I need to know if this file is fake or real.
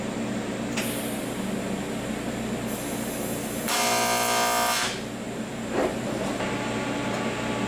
real